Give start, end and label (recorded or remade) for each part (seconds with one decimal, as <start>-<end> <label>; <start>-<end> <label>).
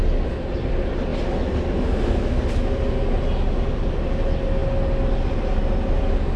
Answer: 0.0-6.4 recorded